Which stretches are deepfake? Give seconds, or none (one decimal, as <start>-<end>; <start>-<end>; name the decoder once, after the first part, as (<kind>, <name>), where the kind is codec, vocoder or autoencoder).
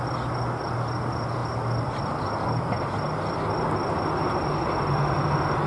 none